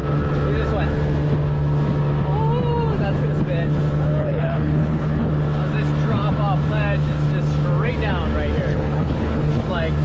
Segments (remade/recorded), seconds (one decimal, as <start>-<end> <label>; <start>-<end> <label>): 0.0-4.2 recorded; 4.2-5.3 remade; 5.3-8.7 recorded; 8.7-9.5 remade; 9.5-10.0 recorded